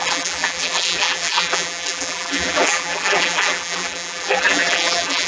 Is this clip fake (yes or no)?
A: yes